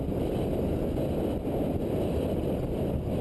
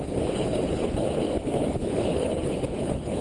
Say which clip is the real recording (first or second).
first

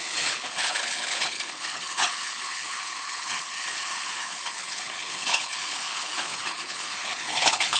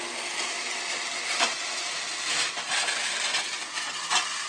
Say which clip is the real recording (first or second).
second